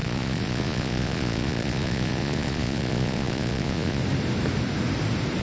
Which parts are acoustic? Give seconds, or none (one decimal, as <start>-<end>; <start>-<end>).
4.0-5.4